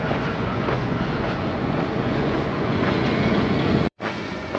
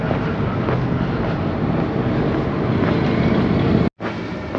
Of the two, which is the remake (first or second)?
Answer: first